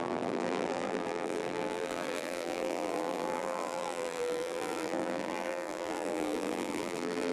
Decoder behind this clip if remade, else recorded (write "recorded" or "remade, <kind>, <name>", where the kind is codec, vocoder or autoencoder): remade, vocoder, BigVGAN v2